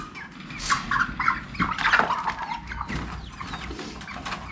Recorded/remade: recorded